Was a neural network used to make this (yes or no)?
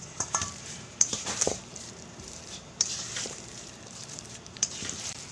yes